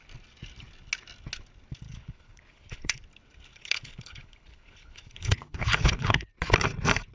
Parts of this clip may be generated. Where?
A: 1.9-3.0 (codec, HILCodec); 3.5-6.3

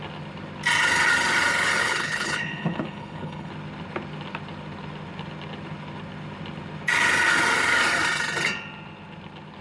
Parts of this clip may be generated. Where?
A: 1.8-3.5 (codec, HILCodec)

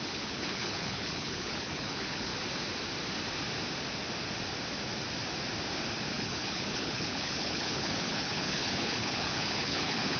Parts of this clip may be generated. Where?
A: 0.0-2.3 (codec, HILCodec); 6.1-10.2

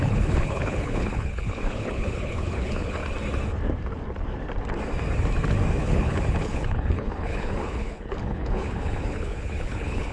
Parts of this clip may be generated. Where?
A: 0.0-3.0 (codec, HILCodec); 5.8-10.1

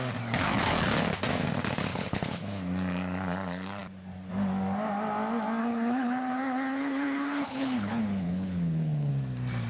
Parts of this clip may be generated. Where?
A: 1.9-2.5 (codec, HILCodec); 5.6-9.1

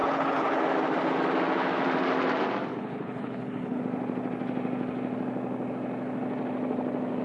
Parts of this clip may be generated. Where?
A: 0.0-0.6 (codec, HILCodec); 2.7-3.8